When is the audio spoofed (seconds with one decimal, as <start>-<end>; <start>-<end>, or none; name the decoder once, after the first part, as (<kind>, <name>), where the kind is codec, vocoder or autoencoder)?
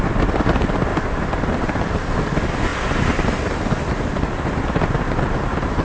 0.9-2.1 (vocoder, BigVGAN v2); 2.7-3.3